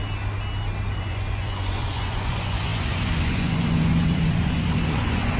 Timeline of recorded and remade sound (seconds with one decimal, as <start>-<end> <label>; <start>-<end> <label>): 0.0-1.0 recorded; 1.0-5.4 remade